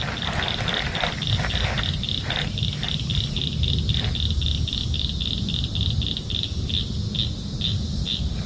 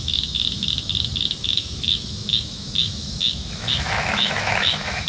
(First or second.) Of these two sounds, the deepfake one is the second